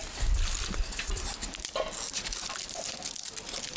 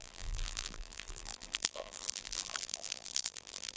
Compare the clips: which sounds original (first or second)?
first